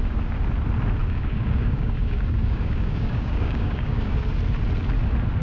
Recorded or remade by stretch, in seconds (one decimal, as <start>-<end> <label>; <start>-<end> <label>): 0.0-1.0 recorded; 1.0-4.2 remade; 4.2-5.4 recorded